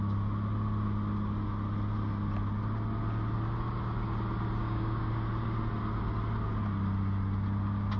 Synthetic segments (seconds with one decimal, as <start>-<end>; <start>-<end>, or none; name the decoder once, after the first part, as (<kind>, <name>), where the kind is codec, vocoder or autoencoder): 4.6-5.1 (codec, DAC)

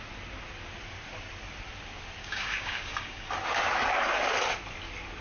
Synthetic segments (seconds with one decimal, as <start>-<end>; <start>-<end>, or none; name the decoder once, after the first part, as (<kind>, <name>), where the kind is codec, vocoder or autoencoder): 2.2-3.3 (codec, DAC)